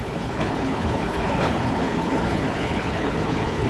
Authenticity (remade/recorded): remade